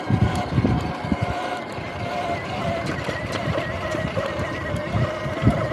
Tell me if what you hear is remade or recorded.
recorded